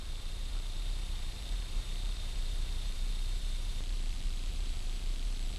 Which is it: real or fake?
fake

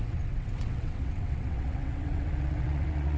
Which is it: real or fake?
fake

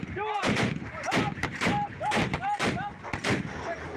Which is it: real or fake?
real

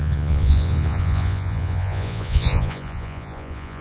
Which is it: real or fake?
fake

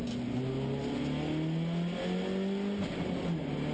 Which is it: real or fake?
real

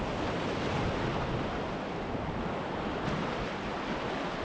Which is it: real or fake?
real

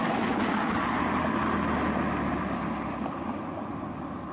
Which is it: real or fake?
real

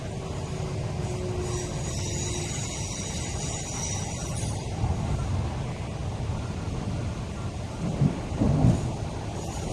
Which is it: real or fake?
real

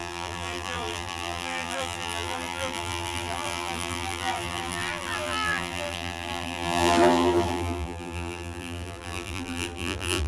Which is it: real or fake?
fake